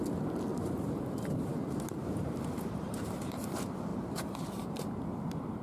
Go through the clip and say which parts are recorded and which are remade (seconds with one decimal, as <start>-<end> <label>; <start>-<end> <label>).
0.0-0.5 recorded; 0.5-3.4 remade; 3.4-3.9 recorded; 3.9-4.6 remade; 4.6-5.6 recorded